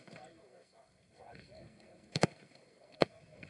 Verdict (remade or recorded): remade